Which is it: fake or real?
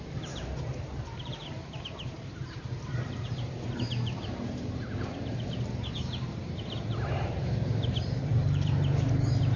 fake